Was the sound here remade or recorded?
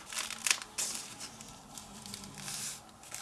recorded